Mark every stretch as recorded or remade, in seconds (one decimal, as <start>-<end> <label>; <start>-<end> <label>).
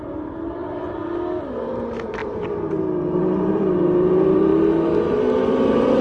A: 0.0-0.6 remade; 0.6-1.7 recorded; 1.7-4.5 remade; 4.5-5.1 recorded; 5.1-6.0 remade